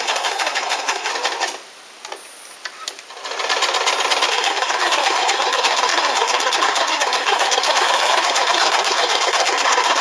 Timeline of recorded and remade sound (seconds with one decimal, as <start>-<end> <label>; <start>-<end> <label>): 0.0-1.1 remade; 1.1-4.3 recorded; 4.3-10.0 remade